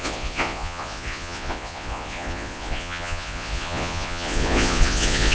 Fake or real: fake